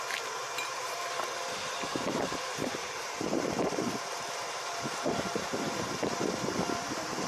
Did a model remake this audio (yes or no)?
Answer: yes